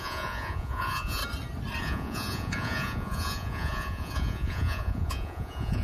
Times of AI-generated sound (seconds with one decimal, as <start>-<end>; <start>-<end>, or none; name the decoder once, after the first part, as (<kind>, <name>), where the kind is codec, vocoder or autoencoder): 0.0-1.2 (vocoder, Vocos); 1.8-5.8